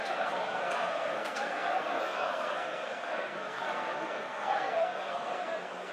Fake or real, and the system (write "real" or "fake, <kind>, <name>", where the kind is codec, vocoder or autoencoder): fake, codec, SNAC